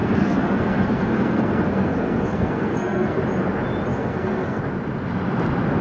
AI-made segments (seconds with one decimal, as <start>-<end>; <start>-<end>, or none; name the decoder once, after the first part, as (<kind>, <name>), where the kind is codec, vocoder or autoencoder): 0.0-3.2 (codec, SNAC); 3.9-4.6